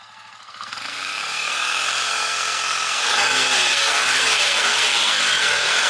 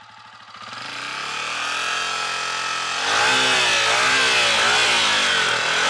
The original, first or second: second